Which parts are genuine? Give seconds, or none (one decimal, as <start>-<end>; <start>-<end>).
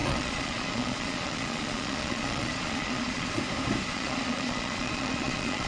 3.4-3.9